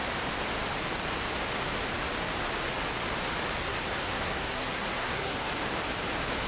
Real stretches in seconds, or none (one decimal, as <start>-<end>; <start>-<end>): 0.0-3.6; 5.5-6.5